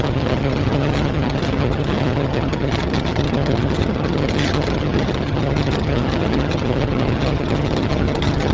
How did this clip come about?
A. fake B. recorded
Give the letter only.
A